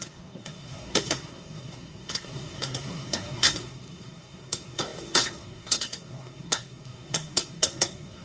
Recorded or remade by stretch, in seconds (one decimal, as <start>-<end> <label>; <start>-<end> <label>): 0.0-8.2 remade